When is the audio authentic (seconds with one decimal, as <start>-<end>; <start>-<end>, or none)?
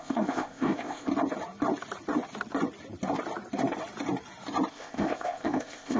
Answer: 1.1-4.7